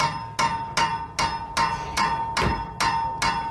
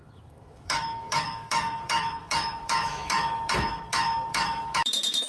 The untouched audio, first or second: first